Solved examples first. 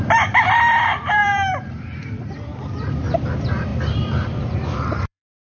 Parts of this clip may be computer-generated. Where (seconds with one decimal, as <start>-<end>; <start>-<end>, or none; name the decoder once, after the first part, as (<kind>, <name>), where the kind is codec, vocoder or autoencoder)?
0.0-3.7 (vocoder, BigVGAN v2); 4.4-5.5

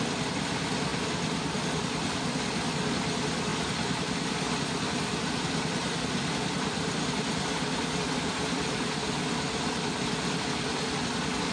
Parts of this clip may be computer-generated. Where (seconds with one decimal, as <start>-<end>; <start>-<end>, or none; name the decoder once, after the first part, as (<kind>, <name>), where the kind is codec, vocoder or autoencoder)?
3.5-6.0 (vocoder, BigVGAN v2)

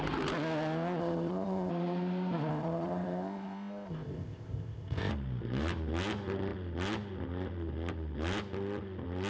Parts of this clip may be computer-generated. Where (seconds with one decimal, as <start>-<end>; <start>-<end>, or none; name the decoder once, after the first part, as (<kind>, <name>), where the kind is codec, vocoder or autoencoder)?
1.0-1.7 (codec, ZipCodec); 2.5-5.1

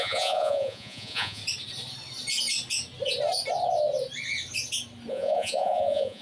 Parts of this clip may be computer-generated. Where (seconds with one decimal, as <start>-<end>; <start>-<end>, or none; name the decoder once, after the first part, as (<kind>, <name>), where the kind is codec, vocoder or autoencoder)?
0.0-1.4 (vocoder, Vocos); 5.1-6.2

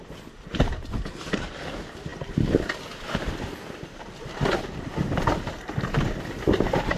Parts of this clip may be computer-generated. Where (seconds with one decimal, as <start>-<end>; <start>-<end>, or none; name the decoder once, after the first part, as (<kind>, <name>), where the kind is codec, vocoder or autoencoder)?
none

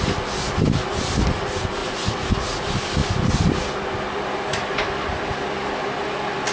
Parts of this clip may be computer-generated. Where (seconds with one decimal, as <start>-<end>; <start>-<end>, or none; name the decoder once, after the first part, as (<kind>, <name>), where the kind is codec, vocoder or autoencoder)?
1.8-2.6 (vocoder, Vocos)

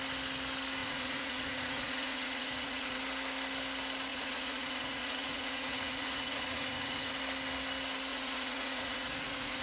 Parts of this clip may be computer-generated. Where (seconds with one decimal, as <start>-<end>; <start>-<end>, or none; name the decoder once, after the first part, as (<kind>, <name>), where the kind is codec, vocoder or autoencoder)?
0.8-3.0 (vocoder, Vocos); 4.1-7.2; 8.1-9.6